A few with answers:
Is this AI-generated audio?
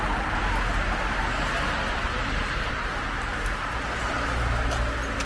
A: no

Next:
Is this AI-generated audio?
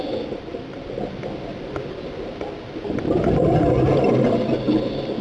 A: no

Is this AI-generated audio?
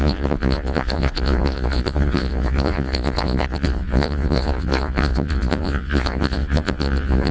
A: yes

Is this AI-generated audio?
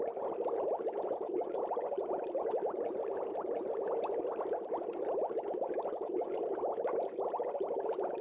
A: no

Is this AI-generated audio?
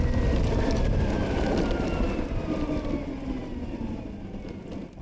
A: no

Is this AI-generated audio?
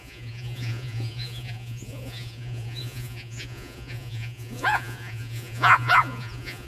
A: yes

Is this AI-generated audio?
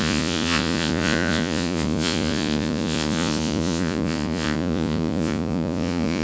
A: yes